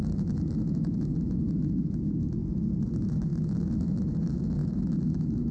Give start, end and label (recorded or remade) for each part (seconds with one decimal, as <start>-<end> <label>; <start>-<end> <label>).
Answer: 0.0-2.4 remade; 2.4-2.9 recorded; 2.9-5.5 remade

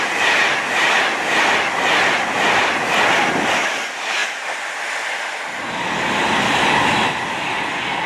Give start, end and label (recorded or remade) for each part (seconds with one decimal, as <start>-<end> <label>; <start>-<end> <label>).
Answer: 0.0-8.1 recorded

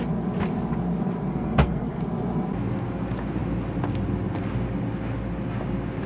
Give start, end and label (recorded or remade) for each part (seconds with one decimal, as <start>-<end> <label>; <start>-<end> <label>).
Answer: 0.0-1.3 recorded; 1.3-2.0 remade; 2.0-6.1 recorded

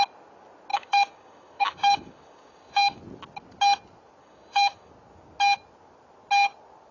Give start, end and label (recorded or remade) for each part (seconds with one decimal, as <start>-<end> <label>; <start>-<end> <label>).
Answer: 0.0-0.7 recorded; 0.7-3.0 remade; 3.0-4.2 recorded; 4.2-4.9 remade; 4.9-6.9 recorded

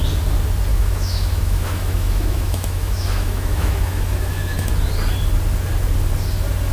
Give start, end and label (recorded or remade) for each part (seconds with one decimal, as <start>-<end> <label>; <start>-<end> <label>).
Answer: 0.0-0.7 recorded; 0.7-4.7 remade; 4.7-6.7 recorded

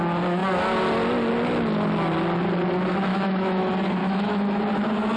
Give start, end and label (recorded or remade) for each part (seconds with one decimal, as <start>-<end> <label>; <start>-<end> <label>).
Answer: 0.0-3.1 recorded; 3.1-3.6 remade; 3.6-4.0 recorded; 4.0-4.6 remade; 4.6-5.2 recorded

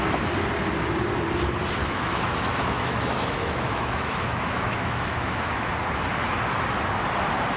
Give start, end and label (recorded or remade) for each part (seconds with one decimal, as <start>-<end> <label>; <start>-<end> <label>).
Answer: 0.0-1.8 recorded; 1.8-5.7 remade; 5.7-7.6 recorded

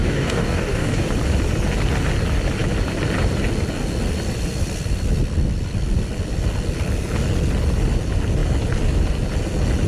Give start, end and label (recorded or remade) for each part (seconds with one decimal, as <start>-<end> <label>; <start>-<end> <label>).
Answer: 0.0-1.1 remade; 1.1-9.9 recorded